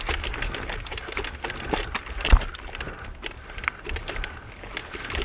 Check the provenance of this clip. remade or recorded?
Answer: recorded